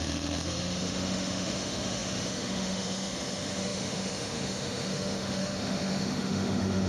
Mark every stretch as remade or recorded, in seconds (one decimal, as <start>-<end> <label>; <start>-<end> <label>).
0.0-6.9 remade